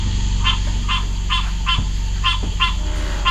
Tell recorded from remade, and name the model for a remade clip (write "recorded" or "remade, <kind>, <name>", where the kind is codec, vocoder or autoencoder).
recorded